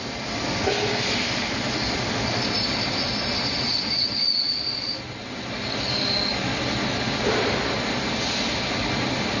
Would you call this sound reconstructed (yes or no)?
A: no